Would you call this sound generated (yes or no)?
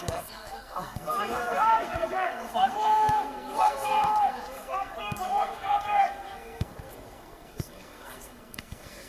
yes